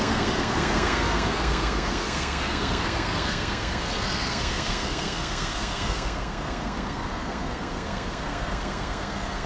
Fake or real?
fake